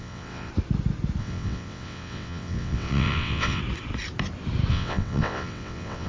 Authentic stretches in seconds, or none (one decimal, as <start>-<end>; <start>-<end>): 0.5-1.2; 3.6-4.7